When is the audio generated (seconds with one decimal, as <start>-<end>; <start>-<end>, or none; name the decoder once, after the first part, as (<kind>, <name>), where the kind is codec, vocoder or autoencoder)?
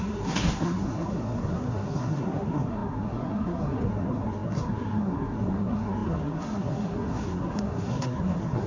0.0-8.7 (codec, SNAC)